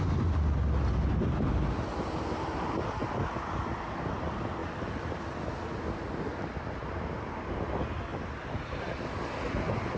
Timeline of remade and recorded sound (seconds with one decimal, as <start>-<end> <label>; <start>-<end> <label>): 0.0-4.6 recorded; 4.6-5.4 remade; 5.4-8.1 recorded; 8.1-9.6 remade; 9.6-10.0 recorded